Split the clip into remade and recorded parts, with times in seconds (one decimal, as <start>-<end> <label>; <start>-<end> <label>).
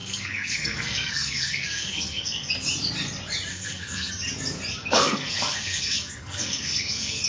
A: 0.0-2.5 remade; 2.5-3.5 recorded; 3.5-4.1 remade; 4.1-4.8 recorded; 4.8-7.3 remade